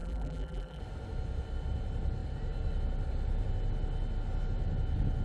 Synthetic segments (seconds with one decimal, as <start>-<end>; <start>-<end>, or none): 0.0-0.8